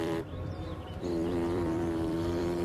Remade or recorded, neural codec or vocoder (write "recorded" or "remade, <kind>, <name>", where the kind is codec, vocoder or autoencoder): remade, vocoder, BigVGAN v2